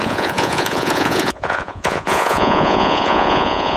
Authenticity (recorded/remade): remade